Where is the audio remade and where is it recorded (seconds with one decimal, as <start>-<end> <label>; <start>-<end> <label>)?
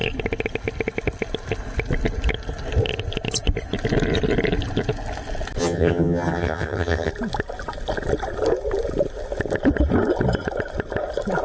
0.0-5.6 recorded; 5.6-7.1 remade; 7.1-11.4 recorded